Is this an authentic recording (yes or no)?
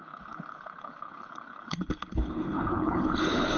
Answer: no